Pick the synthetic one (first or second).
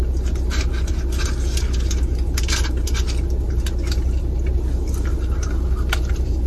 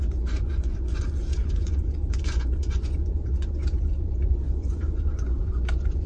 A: second